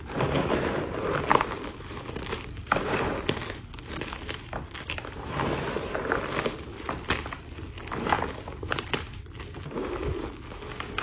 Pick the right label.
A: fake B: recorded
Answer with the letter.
B